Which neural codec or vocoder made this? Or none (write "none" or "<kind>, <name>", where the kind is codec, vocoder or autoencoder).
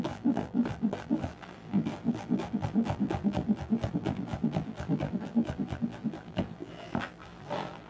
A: vocoder, BigVGAN v2